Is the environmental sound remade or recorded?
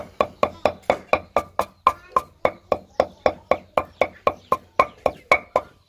recorded